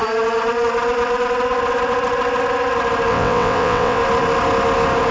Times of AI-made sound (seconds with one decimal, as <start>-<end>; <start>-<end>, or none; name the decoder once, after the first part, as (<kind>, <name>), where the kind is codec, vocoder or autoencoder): 3.1-4.0 (vocoder, WaveNeXt)